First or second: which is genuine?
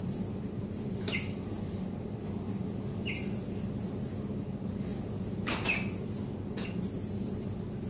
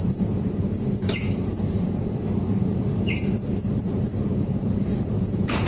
first